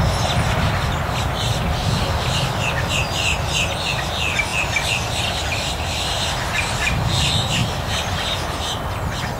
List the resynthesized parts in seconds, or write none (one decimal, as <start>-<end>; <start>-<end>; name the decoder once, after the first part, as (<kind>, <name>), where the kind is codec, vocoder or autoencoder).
none